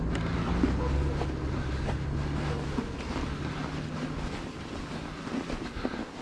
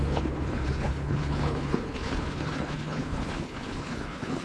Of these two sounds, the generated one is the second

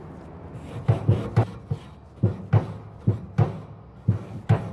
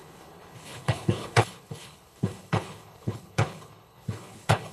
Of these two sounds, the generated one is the second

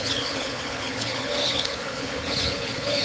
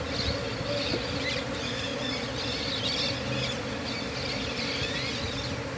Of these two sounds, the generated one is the first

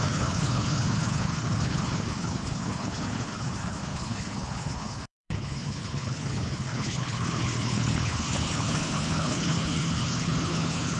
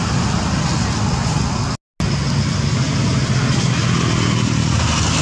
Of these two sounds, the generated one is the first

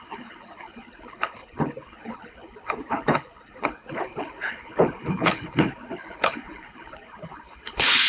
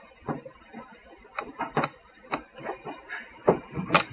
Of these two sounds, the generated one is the first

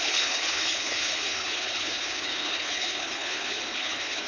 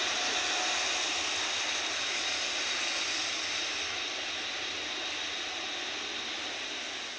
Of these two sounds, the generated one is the first